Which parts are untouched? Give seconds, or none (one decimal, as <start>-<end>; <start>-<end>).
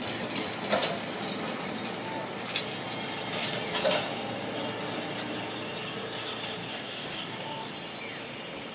0.0-6.7; 7.7-8.7